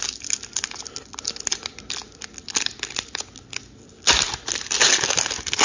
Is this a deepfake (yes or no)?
no